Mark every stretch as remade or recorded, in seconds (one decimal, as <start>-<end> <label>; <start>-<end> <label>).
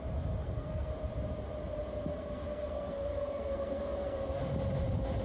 0.0-0.4 recorded; 0.4-0.9 remade; 0.9-2.1 recorded; 2.1-4.4 remade; 4.4-5.2 recorded